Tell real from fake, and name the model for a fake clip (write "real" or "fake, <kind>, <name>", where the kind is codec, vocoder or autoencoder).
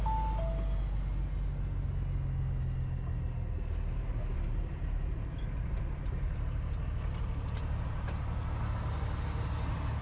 real